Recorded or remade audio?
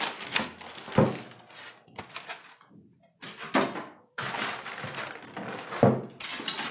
recorded